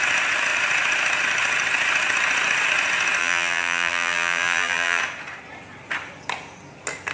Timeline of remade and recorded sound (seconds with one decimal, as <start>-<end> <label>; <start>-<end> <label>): 0.0-3.2 recorded; 3.2-5.0 remade; 5.0-7.1 recorded